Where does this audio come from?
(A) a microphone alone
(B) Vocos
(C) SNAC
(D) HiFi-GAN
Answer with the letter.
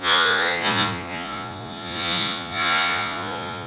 B